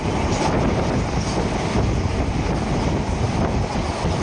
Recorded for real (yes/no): yes